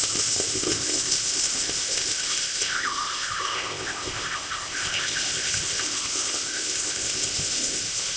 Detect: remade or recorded remade